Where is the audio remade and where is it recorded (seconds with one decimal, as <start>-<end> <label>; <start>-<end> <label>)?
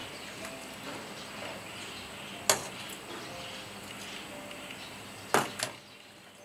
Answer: 0.0-6.4 recorded